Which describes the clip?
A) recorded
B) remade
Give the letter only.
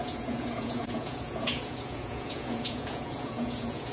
B